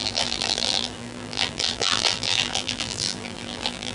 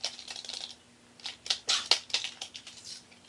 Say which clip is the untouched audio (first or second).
second